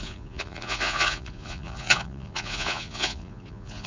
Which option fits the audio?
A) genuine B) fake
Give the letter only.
B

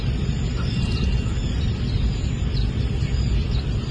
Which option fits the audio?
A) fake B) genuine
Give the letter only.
B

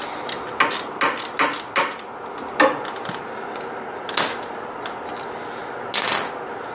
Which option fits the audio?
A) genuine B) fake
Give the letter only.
A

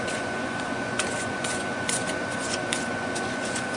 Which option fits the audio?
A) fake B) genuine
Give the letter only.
A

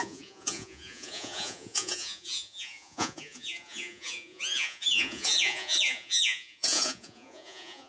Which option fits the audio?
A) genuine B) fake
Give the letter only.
B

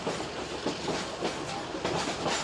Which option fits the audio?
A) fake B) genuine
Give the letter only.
B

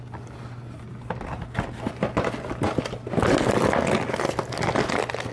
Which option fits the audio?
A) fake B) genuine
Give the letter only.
B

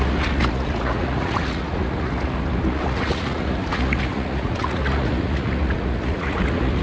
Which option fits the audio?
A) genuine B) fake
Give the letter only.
B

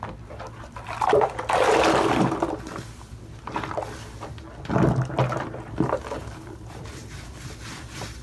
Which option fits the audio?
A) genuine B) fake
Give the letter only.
A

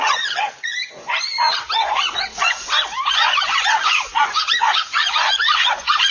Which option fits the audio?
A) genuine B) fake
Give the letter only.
B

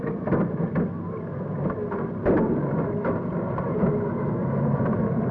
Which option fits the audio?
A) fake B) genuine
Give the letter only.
B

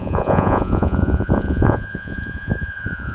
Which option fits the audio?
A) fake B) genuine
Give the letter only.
A